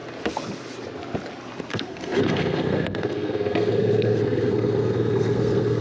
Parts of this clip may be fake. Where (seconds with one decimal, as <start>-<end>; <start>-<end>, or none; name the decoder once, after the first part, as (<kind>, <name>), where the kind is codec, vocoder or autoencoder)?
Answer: 1.7-5.8 (codec, SNAC)